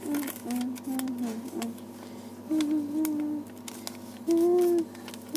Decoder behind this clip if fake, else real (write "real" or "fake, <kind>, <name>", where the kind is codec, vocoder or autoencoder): real